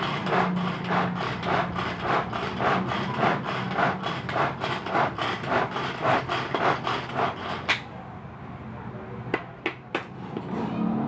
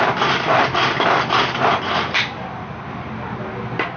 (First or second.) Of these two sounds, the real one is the first